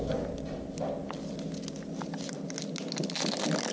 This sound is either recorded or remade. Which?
recorded